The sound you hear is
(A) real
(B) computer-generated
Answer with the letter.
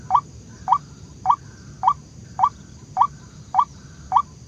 A